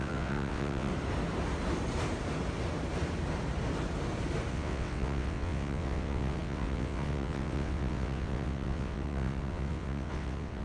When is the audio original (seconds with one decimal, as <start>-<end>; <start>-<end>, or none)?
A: 0.9-4.5

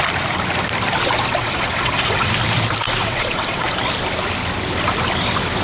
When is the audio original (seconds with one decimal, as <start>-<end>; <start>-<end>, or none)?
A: 0.0-1.4; 2.3-3.0; 3.6-5.6

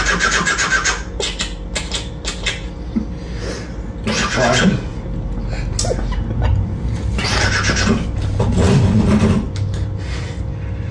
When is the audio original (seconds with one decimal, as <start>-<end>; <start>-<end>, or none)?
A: 0.0-10.9

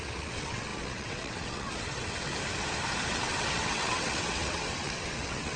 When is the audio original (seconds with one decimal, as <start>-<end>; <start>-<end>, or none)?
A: 2.3-3.1

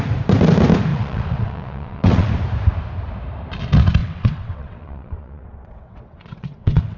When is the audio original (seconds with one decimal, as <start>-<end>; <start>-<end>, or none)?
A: 0.0-0.9; 2.3-4.0

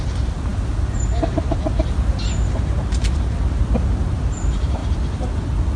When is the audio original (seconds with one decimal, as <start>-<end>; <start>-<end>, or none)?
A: 0.0-5.8

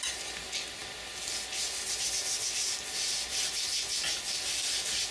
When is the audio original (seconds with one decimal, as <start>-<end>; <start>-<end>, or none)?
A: 0.0-5.1

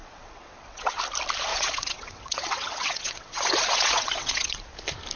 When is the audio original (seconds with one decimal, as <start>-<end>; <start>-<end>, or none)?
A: 1.0-1.5; 4.6-5.2